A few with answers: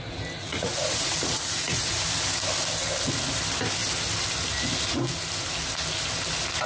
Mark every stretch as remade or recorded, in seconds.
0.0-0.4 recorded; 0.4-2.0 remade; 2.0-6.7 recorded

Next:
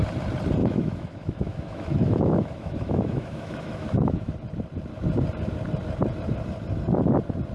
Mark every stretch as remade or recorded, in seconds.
0.0-0.6 recorded; 0.6-4.3 remade; 4.3-7.5 recorded